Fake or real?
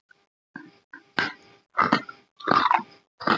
real